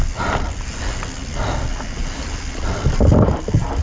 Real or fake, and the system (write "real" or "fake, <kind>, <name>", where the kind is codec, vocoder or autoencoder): real